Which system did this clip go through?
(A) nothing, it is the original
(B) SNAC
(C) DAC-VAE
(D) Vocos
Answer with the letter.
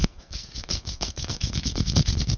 B